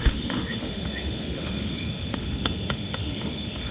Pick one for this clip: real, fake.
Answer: fake